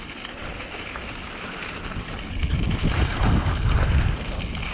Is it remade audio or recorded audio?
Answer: recorded